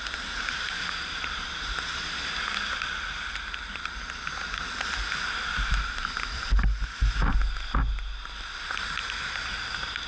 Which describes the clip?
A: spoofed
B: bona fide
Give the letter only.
B